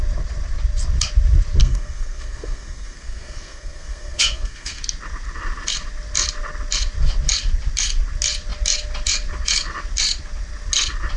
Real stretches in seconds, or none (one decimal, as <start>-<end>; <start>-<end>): 0.0-1.6; 4.8-11.2